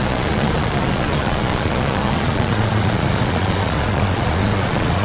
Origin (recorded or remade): remade